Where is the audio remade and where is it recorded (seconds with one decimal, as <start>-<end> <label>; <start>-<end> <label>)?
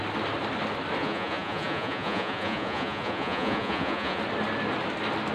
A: 0.0-1.0 recorded; 1.0-4.2 remade; 4.2-5.3 recorded